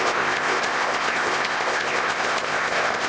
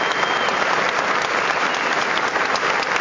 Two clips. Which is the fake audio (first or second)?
first